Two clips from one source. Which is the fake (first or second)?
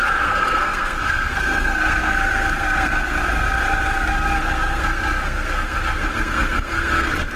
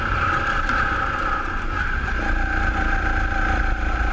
first